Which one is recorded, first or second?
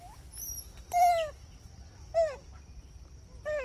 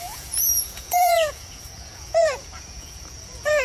first